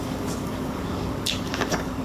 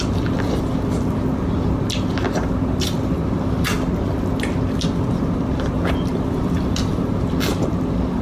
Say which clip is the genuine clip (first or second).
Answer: second